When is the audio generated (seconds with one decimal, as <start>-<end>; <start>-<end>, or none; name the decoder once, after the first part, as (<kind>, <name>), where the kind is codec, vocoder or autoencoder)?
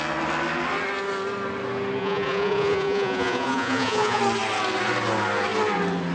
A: 2.0-4.2 (vocoder, Vocos)